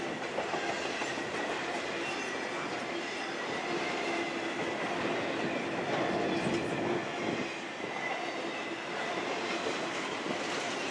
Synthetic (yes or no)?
no